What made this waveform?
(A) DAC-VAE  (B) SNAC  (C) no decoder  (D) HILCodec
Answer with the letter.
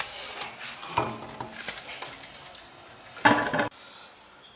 C